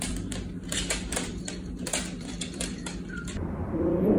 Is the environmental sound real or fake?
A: fake